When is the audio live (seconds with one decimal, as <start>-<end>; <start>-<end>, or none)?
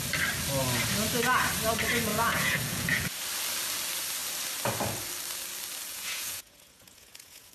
0.0-2.1; 3.1-5.9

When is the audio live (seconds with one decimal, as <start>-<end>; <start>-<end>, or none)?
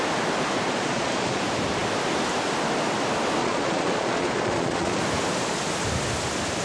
0.0-0.7; 1.4-3.4; 5.0-6.6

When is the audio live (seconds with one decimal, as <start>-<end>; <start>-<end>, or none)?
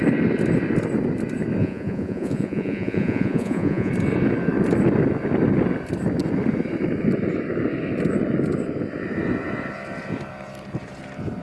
0.0-1.6; 3.9-11.4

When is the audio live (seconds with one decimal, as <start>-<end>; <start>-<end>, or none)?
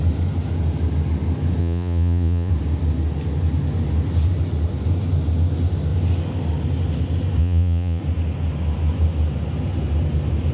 0.0-1.6; 2.5-7.4; 8.0-10.5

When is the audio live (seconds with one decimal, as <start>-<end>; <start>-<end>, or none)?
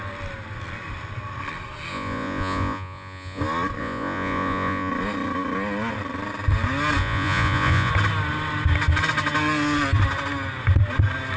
0.0-1.9; 3.4-3.8; 4.9-7.0; 7.9-11.4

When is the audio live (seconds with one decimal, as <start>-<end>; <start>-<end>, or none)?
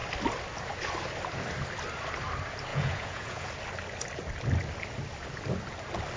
0.0-2.7; 3.5-6.2